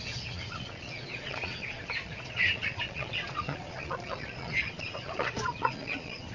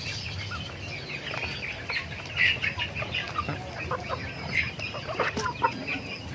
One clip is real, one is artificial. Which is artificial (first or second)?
first